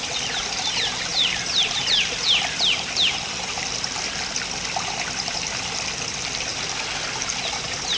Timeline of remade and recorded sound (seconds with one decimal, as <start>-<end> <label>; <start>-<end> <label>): 0.0-1.1 recorded; 1.1-3.6 remade; 3.6-8.0 recorded